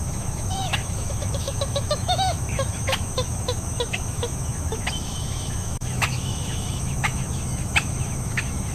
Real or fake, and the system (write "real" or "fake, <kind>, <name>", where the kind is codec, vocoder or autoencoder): fake, autoencoder, DAC-VAE